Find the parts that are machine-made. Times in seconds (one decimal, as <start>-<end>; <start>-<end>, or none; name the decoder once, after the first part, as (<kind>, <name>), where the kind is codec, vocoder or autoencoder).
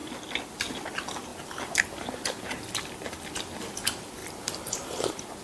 4.2-5.4 (vocoder, BigVGAN v2)